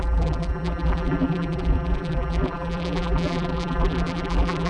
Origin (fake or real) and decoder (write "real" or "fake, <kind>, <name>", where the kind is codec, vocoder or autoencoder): fake, vocoder, BigVGAN v2